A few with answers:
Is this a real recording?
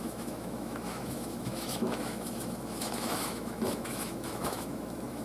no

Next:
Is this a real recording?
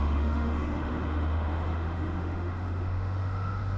no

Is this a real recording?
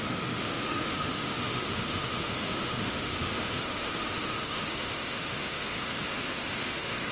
no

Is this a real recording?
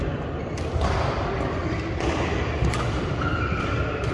yes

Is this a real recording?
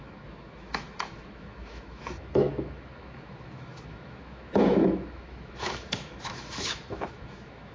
no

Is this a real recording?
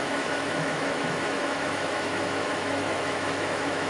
no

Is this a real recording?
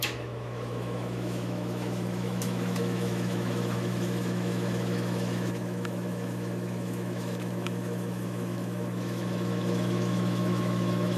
no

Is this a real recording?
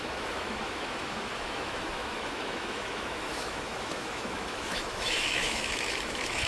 no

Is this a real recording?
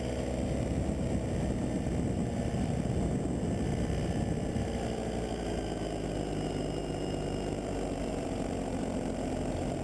yes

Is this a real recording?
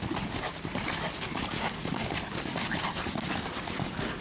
yes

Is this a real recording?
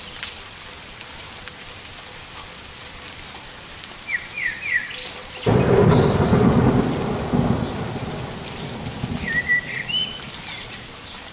yes